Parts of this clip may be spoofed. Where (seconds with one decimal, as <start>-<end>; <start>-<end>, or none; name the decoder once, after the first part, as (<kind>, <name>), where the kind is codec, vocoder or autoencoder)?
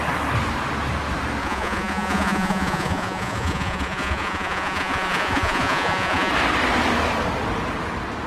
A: 1.4-6.3 (vocoder, Vocos)